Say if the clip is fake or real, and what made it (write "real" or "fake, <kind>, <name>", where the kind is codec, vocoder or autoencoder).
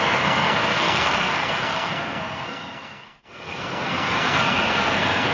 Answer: fake, codec, SNAC